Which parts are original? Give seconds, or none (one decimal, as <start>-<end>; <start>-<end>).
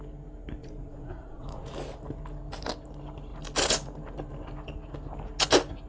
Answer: 0.0-0.6; 1.7-5.9